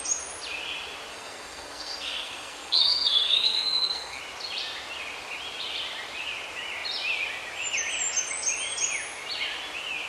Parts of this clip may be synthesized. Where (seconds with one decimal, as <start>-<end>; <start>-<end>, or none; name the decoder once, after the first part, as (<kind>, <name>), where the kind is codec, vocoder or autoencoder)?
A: 1.1-4.2 (codec, SNAC)

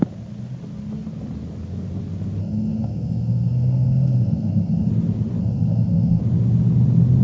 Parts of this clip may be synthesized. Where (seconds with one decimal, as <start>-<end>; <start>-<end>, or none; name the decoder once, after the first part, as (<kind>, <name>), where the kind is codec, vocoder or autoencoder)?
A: 2.4-4.9 (codec, SNAC); 5.4-6.2